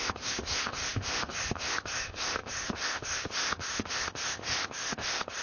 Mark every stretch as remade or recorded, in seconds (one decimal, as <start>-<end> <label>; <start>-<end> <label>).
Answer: 0.0-5.4 remade